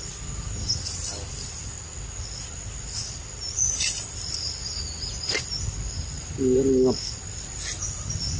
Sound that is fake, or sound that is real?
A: real